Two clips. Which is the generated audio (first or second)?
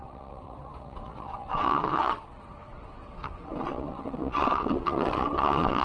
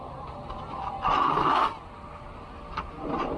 first